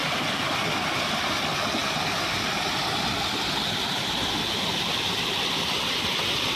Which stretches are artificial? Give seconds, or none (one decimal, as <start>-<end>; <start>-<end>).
none